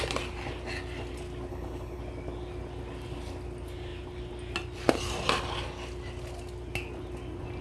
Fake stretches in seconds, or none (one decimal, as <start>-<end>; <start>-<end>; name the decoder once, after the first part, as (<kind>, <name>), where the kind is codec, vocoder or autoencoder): 1.5-2.0 (codec, HILCodec)